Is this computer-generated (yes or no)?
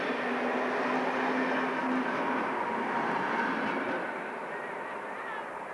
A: no